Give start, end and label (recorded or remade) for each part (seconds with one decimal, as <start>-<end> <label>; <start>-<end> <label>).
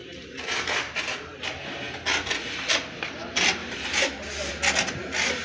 0.0-1.6 remade; 1.6-3.6 recorded; 3.6-4.5 remade; 4.5-5.4 recorded